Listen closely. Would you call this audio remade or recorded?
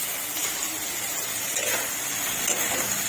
recorded